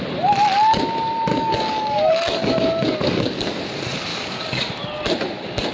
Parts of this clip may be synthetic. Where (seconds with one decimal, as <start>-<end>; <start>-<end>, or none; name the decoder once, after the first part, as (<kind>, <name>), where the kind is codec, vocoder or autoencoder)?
1.3-3.6 (codec, DAC); 4.1-4.7